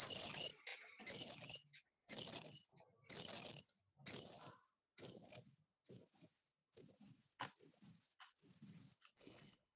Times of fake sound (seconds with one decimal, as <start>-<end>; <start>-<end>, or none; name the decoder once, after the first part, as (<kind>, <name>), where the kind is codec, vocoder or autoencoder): 9.1-9.8 (codec, HILCodec)